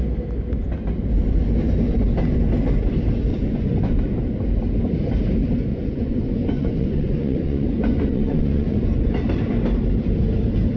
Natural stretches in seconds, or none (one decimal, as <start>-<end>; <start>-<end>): 0.0-3.3; 4.0-5.7; 9.1-10.8